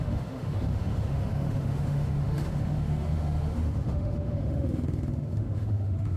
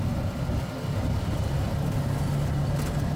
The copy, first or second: first